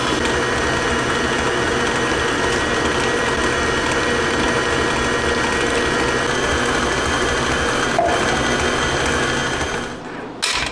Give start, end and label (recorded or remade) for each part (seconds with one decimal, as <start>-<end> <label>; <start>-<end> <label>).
0.0-10.7 recorded